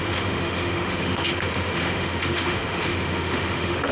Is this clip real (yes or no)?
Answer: no